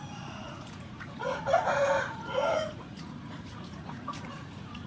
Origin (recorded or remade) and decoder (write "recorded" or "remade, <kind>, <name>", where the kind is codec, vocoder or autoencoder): remade, vocoder, Vocos